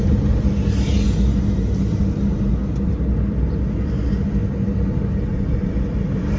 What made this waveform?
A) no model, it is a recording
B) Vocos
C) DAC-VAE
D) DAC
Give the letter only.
A